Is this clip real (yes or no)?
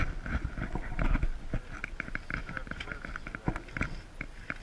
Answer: yes